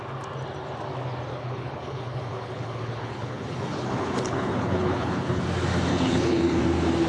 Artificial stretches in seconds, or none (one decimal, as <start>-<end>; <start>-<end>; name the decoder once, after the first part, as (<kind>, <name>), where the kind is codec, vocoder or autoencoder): 1.3-5.4 (codec, HILCodec); 5.9-6.6